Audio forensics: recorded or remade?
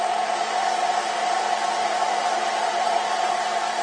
recorded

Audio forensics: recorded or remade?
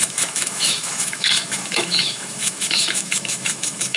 remade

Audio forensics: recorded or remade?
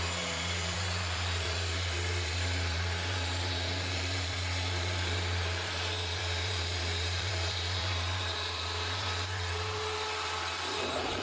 remade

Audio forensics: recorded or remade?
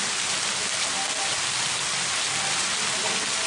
recorded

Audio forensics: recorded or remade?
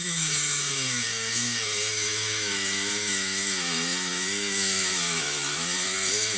remade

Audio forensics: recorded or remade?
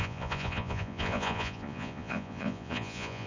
remade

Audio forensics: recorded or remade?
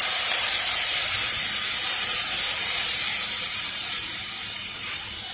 remade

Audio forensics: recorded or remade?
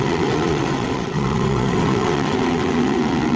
remade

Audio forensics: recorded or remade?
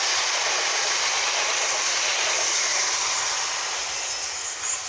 recorded